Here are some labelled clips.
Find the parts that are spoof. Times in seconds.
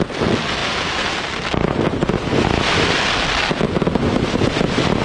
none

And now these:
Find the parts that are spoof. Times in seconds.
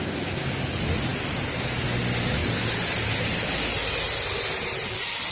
none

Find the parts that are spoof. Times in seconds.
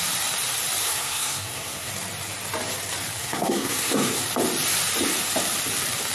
0.8-1.9 (codec, SNAC); 3.2-4.2